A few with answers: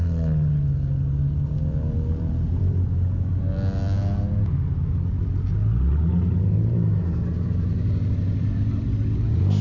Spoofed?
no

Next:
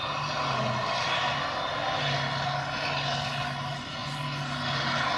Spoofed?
no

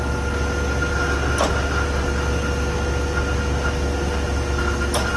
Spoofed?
no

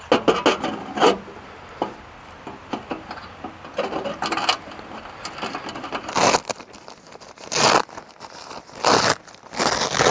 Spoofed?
no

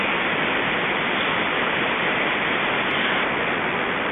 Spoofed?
no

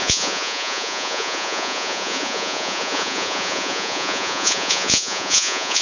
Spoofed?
yes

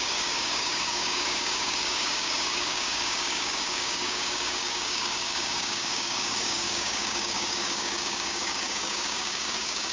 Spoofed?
yes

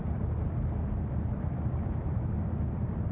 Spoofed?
yes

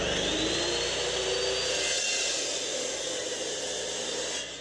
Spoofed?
no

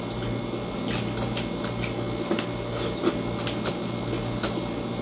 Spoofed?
no